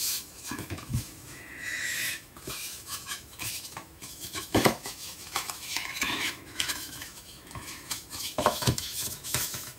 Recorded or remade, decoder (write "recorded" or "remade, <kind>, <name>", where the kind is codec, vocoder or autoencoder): remade, autoencoder, DAC-VAE